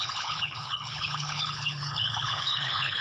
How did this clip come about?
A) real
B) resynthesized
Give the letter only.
B